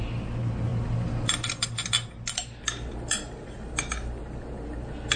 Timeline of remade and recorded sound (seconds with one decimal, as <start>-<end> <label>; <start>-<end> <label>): 0.0-5.2 recorded